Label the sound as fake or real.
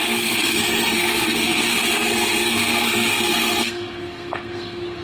fake